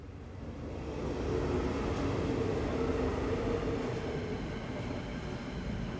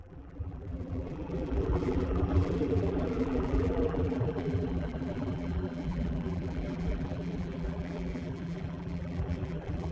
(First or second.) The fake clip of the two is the second